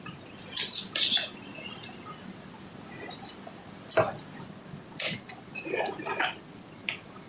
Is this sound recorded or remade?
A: recorded